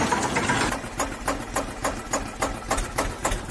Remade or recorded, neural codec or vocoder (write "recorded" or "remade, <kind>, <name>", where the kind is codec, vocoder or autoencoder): recorded